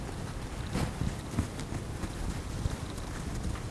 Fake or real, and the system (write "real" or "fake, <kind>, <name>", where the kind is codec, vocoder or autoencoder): real